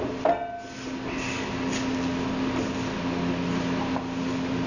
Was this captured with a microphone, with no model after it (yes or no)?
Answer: yes